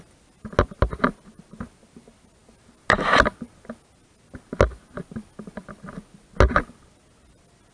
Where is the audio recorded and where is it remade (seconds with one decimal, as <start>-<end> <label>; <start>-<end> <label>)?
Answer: 0.0-7.7 recorded